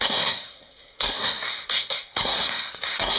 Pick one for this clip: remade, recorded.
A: remade